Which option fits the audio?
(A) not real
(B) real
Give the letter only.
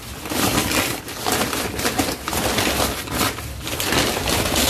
B